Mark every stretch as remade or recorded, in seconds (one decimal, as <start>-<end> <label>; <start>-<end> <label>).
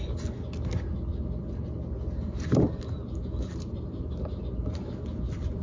0.0-5.6 recorded